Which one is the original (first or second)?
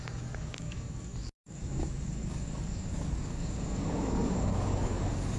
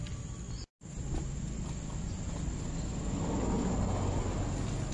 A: second